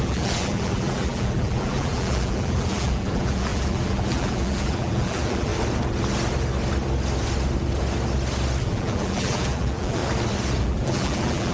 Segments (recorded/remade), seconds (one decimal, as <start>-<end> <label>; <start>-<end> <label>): 0.0-5.5 remade; 5.5-8.6 recorded; 8.6-10.0 remade; 10.0-10.6 recorded; 10.6-11.5 remade